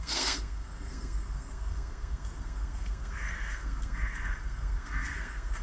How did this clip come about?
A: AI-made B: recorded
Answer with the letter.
A